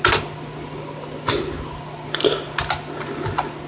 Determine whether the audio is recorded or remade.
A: recorded